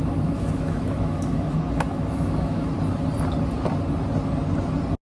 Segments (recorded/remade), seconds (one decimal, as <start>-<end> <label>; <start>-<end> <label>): 0.0-2.7 remade; 2.7-5.0 recorded